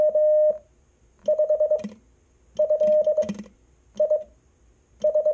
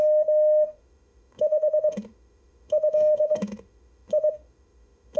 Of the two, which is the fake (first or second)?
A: second